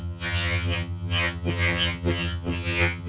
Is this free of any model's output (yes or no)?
no